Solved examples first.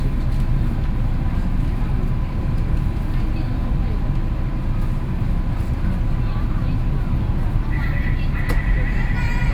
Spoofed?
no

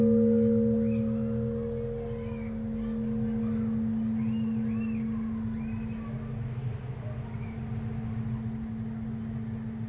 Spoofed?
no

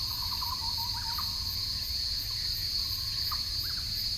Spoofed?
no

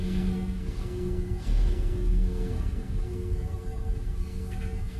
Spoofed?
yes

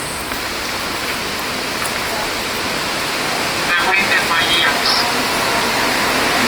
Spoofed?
no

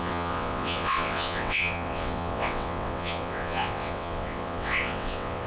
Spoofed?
yes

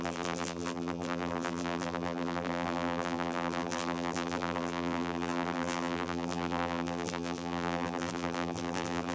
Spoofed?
yes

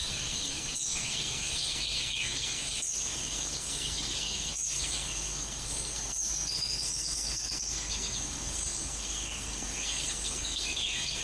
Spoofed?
yes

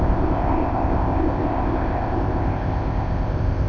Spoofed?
yes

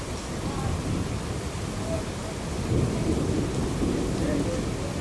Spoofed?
no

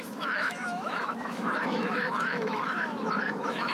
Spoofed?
yes